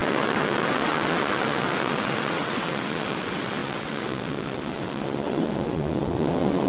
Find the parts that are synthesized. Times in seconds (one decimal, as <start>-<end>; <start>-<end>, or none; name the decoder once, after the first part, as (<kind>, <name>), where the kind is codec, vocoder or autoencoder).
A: 0.0-6.7 (vocoder, WaveNeXt)